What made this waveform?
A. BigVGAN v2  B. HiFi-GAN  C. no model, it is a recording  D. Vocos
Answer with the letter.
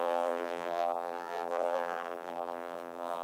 A